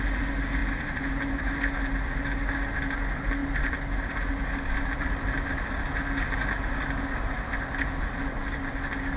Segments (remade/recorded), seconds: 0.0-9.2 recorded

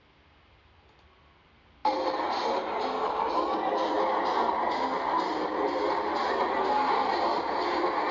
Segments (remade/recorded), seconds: 0.0-8.1 recorded

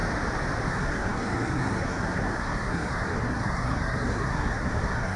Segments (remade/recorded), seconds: 0.0-0.7 recorded; 0.7-5.2 remade